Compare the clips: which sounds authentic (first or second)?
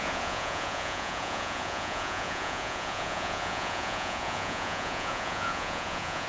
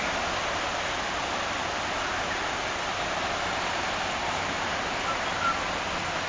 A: second